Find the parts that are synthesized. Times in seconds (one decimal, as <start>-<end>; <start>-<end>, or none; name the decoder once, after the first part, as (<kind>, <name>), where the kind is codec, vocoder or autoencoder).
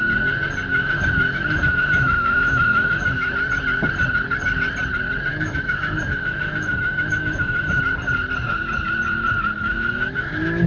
0.7-3.3 (autoencoder, DAC-VAE); 5.3-7.8; 9.6-10.7